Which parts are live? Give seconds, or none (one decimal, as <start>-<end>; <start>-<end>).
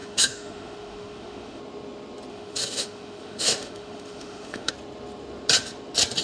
1.6-2.3; 4.7-6.2